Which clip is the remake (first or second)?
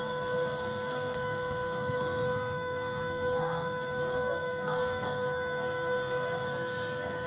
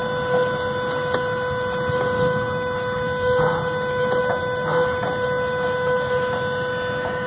first